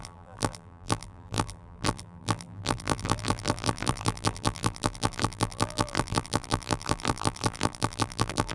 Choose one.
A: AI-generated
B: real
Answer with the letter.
A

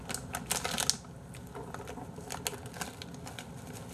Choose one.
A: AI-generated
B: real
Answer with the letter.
B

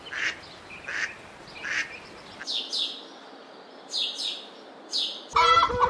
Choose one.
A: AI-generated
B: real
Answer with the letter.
B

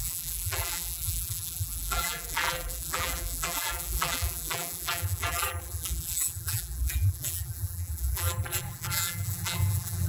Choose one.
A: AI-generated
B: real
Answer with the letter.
A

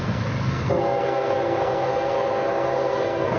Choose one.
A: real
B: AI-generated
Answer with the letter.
B